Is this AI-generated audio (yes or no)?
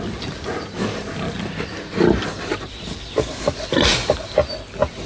no